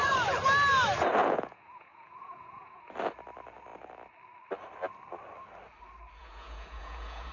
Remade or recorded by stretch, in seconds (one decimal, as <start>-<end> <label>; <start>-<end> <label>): 0.0-1.2 recorded; 1.2-2.9 remade; 2.9-6.2 recorded; 6.2-7.3 remade

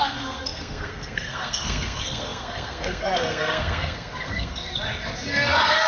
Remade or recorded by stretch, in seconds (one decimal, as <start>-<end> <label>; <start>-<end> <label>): 0.0-4.7 remade; 4.7-5.3 recorded; 5.3-5.9 remade

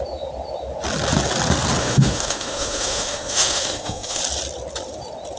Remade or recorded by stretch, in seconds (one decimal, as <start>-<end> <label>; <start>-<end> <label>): 0.0-1.8 recorded; 1.8-4.2 remade; 4.2-5.4 recorded

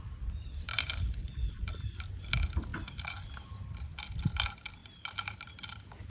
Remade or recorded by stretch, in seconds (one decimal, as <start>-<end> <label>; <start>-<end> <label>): 0.0-0.7 recorded; 0.7-2.3 remade; 2.3-4.8 recorded; 4.8-6.1 remade

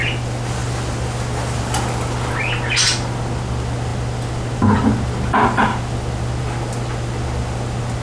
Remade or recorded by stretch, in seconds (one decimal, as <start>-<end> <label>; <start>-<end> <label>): 0.0-8.0 recorded

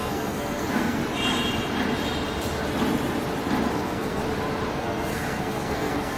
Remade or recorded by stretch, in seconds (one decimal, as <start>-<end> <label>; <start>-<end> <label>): 0.0-1.0 remade; 1.0-3.7 recorded; 3.7-4.2 remade; 4.2-4.7 recorded; 4.7-6.2 remade